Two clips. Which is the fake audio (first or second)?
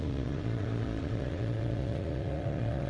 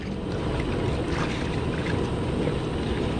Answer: first